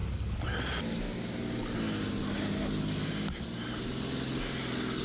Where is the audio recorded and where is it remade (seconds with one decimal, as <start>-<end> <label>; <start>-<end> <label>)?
0.0-5.0 recorded